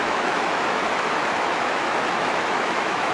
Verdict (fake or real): fake